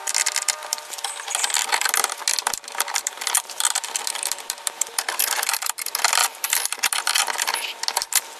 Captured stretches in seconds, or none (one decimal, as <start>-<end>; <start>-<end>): 0.0-8.4

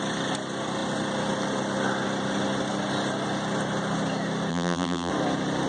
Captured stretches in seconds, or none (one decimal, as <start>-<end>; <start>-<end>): 0.0-4.5; 5.1-5.7

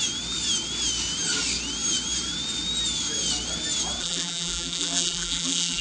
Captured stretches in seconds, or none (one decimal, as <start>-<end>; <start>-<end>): 0.0-4.0